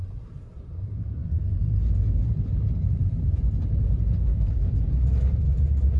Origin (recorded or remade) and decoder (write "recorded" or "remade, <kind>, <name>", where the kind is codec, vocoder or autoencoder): remade, vocoder, BigVGAN v2